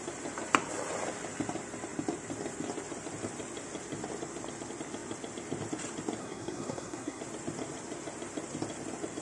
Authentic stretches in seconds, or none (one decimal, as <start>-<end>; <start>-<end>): 0.0-6.2; 7.2-9.2